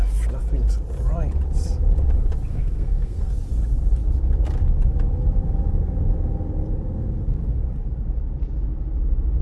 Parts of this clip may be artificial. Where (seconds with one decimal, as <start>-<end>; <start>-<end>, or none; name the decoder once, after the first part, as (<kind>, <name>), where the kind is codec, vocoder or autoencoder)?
2.5-3.3 (codec, SNAC)